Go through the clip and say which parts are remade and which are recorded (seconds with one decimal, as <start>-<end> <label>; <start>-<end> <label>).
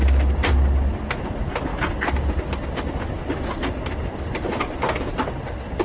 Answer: 0.0-5.8 recorded